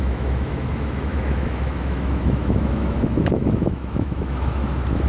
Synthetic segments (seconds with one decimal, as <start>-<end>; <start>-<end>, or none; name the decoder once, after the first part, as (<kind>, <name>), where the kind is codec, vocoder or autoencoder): 0.0-5.1 (autoencoder, DAC-VAE)